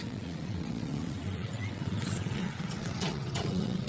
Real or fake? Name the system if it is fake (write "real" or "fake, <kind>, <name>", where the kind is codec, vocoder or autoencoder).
fake, vocoder, WaveNeXt